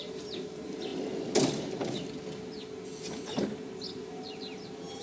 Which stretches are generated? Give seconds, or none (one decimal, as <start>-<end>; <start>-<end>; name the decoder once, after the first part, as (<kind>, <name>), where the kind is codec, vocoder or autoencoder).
0.0-0.9 (vocoder, BigVGAN v2); 3.9-5.0